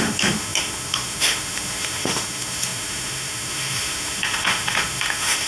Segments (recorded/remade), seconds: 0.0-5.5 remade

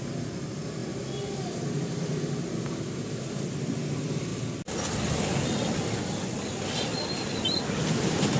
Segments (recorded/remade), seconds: 0.0-8.4 recorded

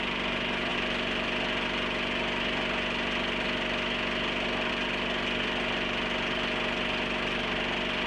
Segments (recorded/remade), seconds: 0.0-8.1 recorded

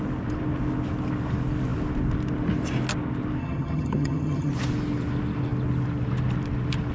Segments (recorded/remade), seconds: 0.0-3.4 recorded; 3.4-4.5 remade; 4.5-6.9 recorded

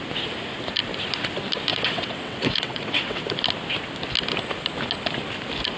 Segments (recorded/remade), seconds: 0.0-1.7 recorded; 1.7-3.2 remade; 3.2-5.8 recorded

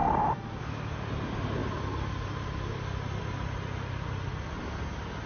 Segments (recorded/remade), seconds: 0.0-5.3 recorded